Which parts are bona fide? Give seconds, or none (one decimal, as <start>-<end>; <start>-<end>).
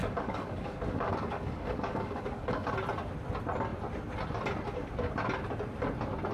2.7-6.3